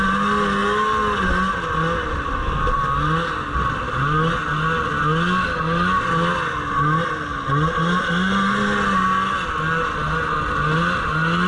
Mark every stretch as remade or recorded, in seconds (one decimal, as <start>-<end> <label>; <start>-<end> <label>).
0.0-11.5 recorded